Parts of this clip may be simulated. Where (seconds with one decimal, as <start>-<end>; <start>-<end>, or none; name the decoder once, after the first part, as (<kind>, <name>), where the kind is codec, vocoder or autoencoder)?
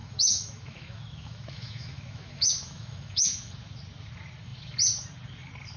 0.0-3.5 (autoencoder, DAC-VAE)